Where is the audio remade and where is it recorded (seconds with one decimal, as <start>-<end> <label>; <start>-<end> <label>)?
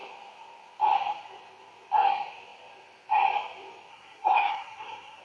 0.0-3.9 recorded; 3.9-5.2 remade